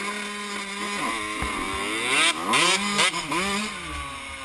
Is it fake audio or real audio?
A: real